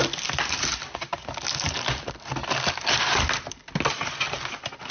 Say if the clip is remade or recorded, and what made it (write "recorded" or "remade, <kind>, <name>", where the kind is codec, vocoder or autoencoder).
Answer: recorded